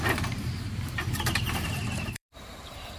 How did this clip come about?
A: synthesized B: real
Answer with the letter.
A